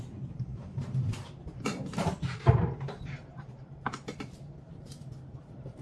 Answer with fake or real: fake